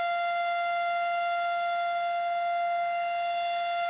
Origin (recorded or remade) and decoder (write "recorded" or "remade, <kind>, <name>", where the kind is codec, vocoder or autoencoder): recorded